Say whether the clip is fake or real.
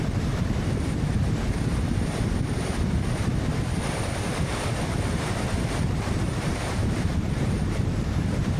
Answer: fake